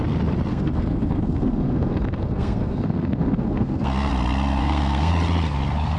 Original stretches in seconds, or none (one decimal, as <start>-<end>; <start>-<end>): 0.0-0.5; 4.1-4.6; 5.1-6.0